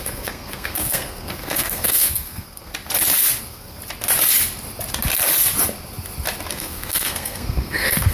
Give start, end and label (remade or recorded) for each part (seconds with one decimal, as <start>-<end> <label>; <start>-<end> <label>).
0.0-2.7 remade; 2.7-3.4 recorded; 3.4-3.8 remade; 3.8-6.5 recorded; 6.5-8.1 remade

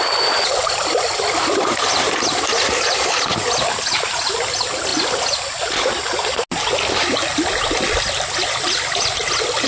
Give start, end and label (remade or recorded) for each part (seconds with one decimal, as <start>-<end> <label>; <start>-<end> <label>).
0.0-9.7 recorded